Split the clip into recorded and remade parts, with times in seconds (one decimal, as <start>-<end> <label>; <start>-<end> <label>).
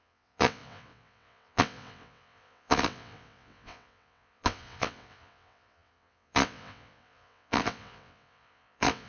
0.0-9.1 remade